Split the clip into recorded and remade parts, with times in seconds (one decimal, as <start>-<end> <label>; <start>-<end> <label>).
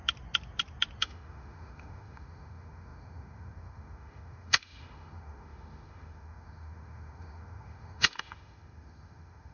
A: 0.0-1.0 recorded; 1.0-9.5 remade